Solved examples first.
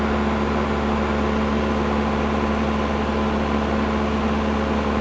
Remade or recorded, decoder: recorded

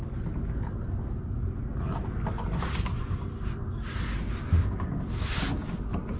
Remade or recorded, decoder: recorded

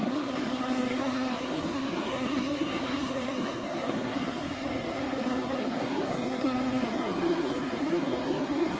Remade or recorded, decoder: remade, codec, SNAC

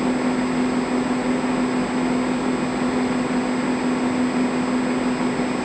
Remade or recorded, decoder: recorded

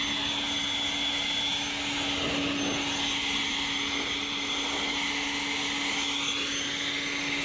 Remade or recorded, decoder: recorded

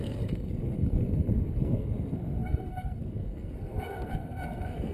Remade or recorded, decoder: remade, codec, SNAC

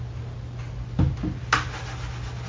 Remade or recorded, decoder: recorded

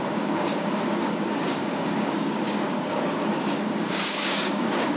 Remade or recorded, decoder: remade, codec, DAC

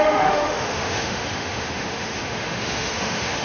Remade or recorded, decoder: remade, autoencoder, DAC-VAE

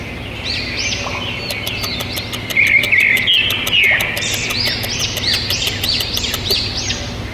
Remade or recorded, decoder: recorded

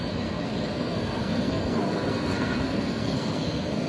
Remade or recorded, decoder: remade, codec, SNAC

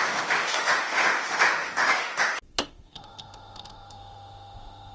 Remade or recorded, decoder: remade, autoencoder, DAC-VAE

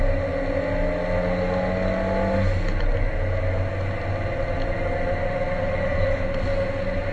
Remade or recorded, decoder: recorded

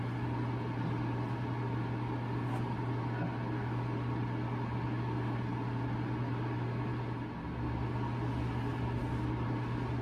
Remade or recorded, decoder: recorded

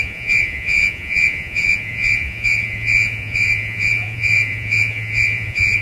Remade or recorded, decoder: remade, vocoder, Vocos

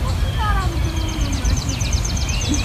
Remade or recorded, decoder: remade, vocoder, BigVGAN v2